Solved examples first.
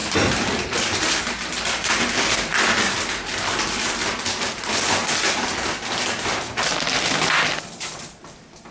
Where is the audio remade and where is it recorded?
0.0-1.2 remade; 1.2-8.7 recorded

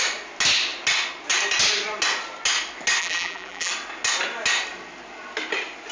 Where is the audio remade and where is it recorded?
0.0-3.0 recorded; 3.0-3.7 remade; 3.7-5.9 recorded

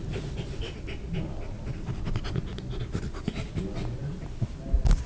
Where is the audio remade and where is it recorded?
0.0-5.1 recorded

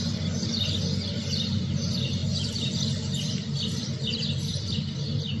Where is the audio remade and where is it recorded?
0.0-2.2 recorded; 2.2-5.4 remade